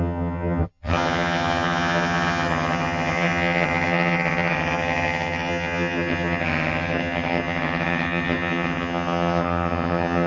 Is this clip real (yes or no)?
no